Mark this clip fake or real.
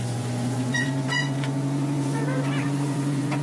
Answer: fake